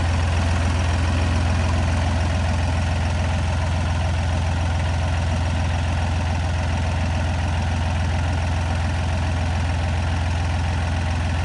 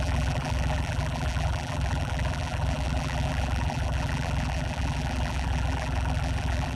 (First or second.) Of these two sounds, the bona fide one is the first